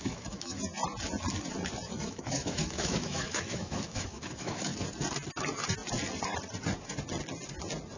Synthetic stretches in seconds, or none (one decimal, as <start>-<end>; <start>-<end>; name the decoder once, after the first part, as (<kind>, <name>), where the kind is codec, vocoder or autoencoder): 0.0-0.6 (autoencoder, DAC-VAE); 1.9-4.7